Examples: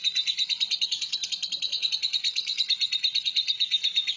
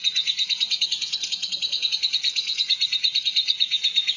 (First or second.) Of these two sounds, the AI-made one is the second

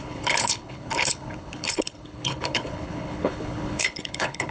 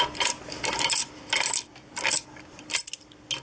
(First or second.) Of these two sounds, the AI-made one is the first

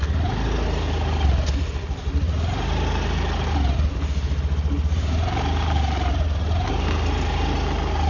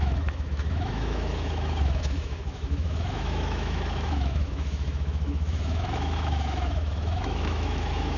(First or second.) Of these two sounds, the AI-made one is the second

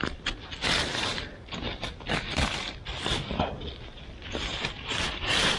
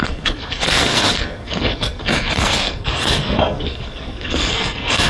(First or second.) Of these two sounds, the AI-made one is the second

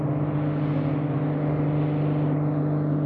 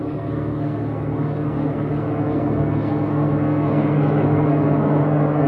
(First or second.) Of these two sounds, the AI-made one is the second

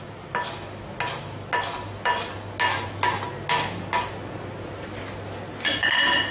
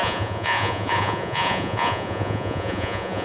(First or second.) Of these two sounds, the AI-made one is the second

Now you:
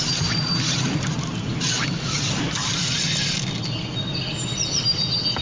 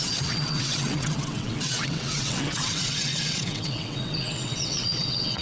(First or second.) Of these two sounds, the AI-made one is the second